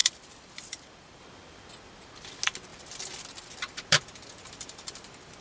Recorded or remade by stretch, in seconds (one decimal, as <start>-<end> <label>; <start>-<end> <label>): 0.0-1.2 remade; 1.2-2.7 recorded; 2.7-5.4 remade